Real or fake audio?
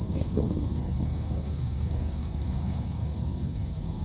fake